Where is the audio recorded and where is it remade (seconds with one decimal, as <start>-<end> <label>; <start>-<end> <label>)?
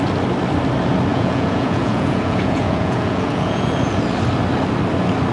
0.0-1.1 recorded; 1.1-4.0 remade; 4.0-5.3 recorded